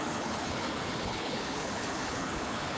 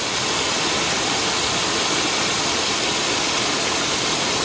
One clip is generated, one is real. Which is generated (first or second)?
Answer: first